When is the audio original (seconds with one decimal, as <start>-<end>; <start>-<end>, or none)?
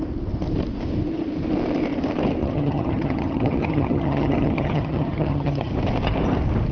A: 0.0-2.4; 5.7-6.7